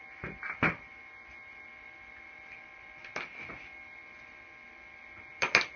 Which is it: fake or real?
real